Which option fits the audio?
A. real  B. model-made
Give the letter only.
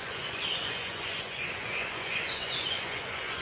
B